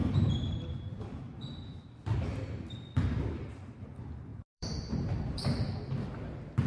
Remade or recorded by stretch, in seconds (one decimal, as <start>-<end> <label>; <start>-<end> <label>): 0.0-1.9 remade; 1.9-4.3 recorded; 4.3-5.4 remade; 5.4-6.7 recorded